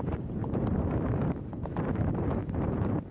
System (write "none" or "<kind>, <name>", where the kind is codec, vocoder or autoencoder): vocoder, BigVGAN v2